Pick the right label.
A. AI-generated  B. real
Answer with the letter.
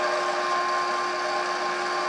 B